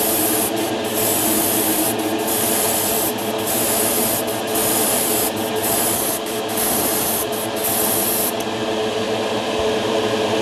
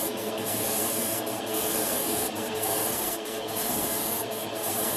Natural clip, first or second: first